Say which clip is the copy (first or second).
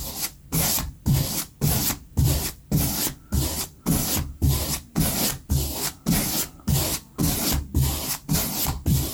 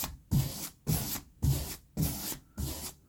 first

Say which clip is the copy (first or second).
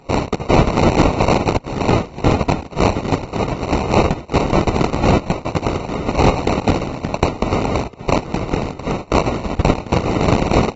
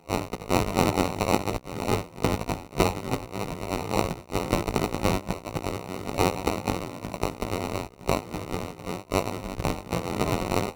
second